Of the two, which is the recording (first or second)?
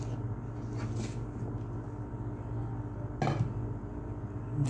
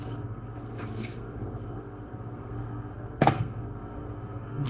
first